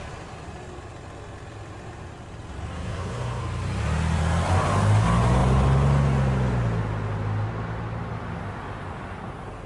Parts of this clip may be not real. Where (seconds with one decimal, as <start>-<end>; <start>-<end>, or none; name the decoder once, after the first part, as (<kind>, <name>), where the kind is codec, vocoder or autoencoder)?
2.7-3.4 (codec, SNAC)